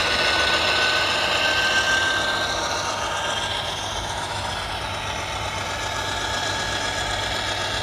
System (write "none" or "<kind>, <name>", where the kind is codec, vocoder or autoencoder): none